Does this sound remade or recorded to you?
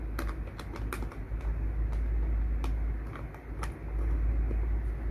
recorded